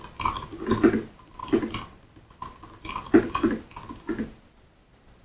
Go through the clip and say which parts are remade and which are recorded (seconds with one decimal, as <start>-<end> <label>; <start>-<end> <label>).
0.0-5.2 recorded